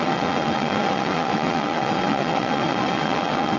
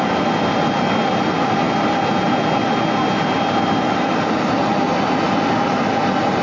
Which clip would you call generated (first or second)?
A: first